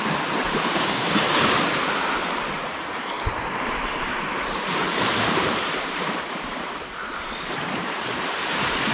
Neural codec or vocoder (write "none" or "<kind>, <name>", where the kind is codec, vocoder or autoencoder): vocoder, BigVGAN v2